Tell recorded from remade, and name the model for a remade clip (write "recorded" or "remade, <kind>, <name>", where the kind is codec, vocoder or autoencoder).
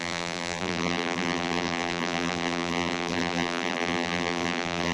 remade, vocoder, BigVGAN v2